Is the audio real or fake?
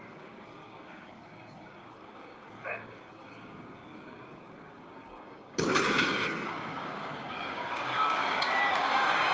fake